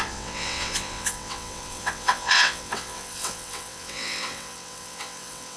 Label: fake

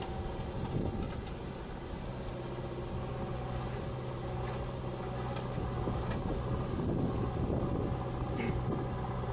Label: real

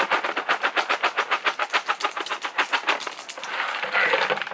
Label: real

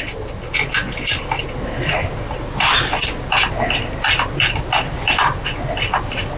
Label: real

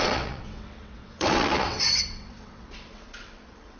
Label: fake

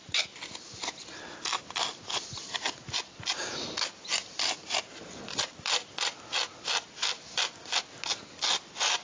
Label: real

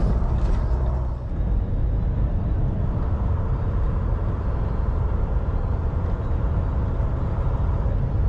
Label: real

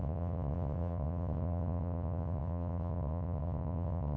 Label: fake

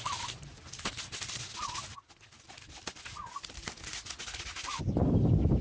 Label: real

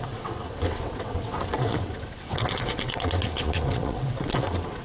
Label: fake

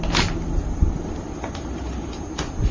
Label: real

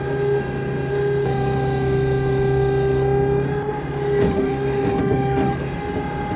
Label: real